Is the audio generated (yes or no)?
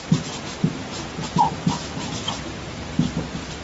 no